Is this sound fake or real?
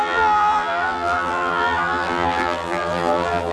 fake